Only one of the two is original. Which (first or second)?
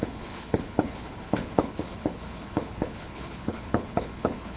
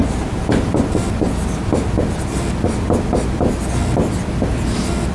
second